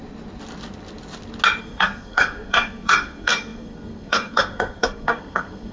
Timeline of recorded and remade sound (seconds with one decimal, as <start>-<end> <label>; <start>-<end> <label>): 0.0-1.6 recorded; 1.6-5.7 remade